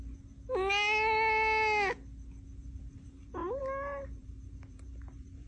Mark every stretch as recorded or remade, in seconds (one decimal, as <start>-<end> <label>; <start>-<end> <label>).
0.0-2.6 recorded; 2.6-3.6 remade; 3.6-4.2 recorded; 4.2-5.5 remade